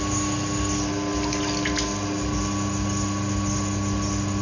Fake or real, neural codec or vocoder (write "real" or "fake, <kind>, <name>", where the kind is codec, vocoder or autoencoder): real